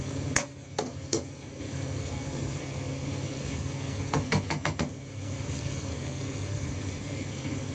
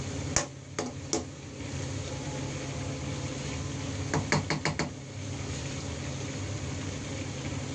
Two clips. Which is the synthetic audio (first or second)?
first